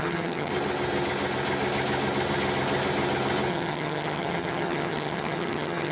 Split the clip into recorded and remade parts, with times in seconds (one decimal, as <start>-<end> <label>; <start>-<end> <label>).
0.0-0.5 remade; 0.5-3.5 recorded; 3.5-5.9 remade